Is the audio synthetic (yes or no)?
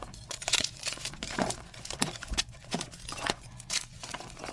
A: yes